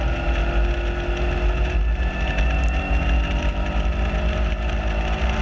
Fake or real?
real